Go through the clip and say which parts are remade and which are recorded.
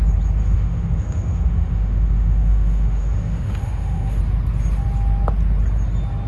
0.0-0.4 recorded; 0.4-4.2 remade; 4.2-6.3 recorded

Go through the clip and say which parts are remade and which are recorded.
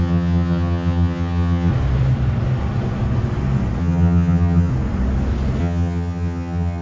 0.0-1.7 remade; 1.7-3.8 recorded; 3.8-4.7 remade; 4.7-5.6 recorded; 5.6-6.8 remade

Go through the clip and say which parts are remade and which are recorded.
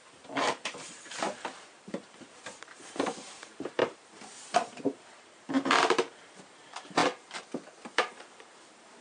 0.0-7.0 remade; 7.0-7.8 recorded; 7.8-9.0 remade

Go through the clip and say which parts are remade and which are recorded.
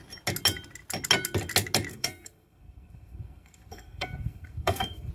0.0-1.9 recorded; 1.9-5.1 remade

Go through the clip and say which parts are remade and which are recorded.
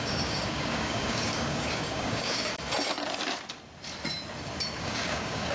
0.0-2.5 remade; 2.5-4.8 recorded; 4.8-5.5 remade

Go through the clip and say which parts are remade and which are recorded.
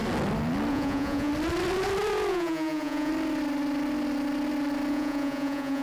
0.0-0.7 recorded; 0.7-1.3 remade; 1.3-2.3 recorded; 2.3-3.1 remade; 3.1-4.9 recorded; 4.9-5.8 remade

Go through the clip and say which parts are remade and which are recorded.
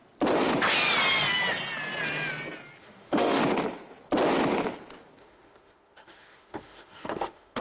0.0-2.8 recorded; 2.8-3.4 remade; 3.4-5.2 recorded; 5.2-7.6 remade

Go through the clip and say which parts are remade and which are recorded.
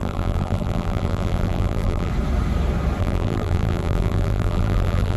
0.0-2.1 remade; 2.1-3.0 recorded; 3.0-5.2 remade